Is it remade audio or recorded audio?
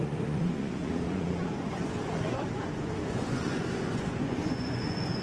remade